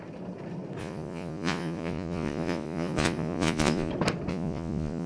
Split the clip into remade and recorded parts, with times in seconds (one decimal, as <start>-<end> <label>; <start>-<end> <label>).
0.0-0.8 recorded; 0.8-3.9 remade; 3.9-4.3 recorded; 4.3-5.1 remade